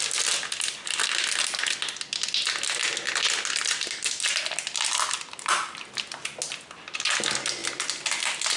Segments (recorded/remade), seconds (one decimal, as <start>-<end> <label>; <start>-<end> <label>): 0.0-8.6 recorded